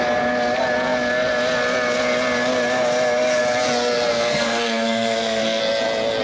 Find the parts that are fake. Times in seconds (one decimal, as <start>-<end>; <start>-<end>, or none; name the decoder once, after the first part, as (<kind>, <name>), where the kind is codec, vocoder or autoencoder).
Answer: 4.1-5.6 (codec, SNAC)